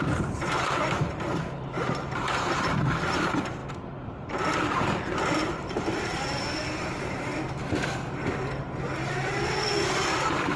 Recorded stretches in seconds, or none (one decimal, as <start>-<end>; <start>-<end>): 7.3-9.7